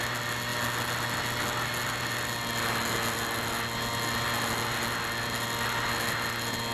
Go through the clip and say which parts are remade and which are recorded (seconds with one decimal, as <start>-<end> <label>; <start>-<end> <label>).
0.0-6.7 recorded